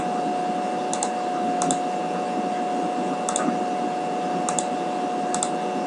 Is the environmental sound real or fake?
real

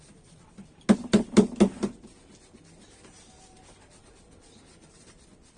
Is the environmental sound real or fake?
real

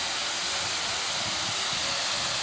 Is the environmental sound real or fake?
real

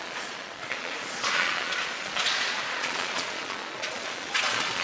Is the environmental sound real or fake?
fake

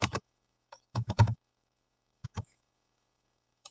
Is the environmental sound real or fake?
fake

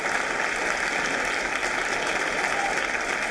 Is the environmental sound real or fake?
real